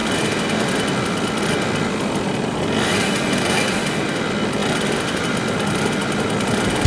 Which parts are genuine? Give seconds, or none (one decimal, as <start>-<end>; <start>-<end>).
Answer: 0.0-4.1